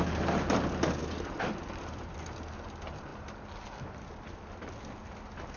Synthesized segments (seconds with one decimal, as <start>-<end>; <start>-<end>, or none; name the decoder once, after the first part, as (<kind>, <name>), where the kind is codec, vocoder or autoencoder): 1.0-2.2 (vocoder, BigVGAN v2); 3.1-5.0